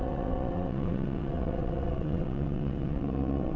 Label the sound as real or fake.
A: fake